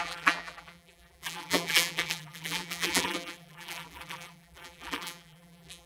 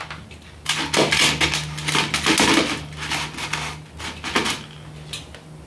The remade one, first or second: first